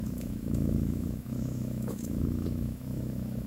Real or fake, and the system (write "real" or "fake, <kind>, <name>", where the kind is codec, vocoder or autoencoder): fake, autoencoder, DAC-VAE